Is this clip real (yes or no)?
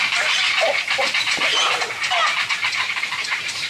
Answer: yes